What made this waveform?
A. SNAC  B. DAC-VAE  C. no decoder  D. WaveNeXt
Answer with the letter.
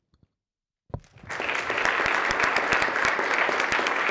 C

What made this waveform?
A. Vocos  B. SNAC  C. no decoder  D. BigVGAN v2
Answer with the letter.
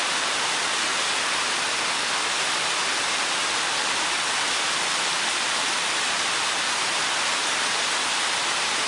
C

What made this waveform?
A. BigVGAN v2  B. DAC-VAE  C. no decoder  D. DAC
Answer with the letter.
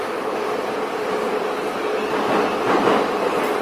C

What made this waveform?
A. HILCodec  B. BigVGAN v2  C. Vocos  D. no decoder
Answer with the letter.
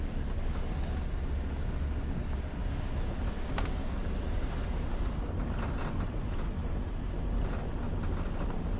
D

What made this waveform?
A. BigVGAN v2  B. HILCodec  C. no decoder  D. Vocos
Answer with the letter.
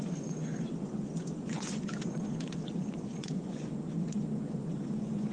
D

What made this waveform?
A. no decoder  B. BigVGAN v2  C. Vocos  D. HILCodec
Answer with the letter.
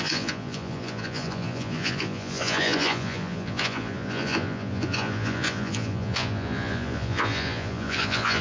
C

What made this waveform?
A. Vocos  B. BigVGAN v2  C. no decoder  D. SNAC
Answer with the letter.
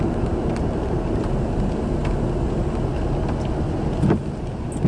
C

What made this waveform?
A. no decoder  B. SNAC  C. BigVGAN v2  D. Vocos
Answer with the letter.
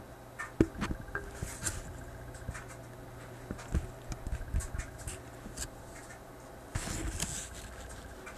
A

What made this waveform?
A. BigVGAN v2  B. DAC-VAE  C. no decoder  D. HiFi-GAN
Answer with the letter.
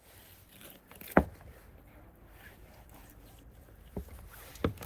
C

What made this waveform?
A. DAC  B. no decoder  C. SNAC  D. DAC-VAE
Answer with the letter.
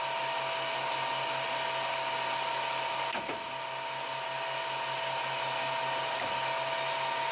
B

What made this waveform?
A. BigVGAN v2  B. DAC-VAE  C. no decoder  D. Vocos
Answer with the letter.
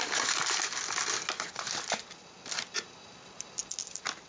C